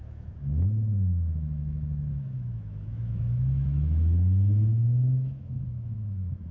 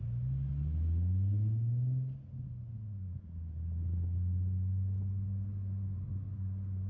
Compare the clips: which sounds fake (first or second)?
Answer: first